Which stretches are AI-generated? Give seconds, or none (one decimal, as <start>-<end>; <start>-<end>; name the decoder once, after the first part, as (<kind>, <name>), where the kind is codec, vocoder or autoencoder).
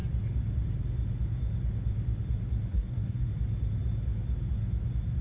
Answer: 2.7-3.3 (codec, SNAC)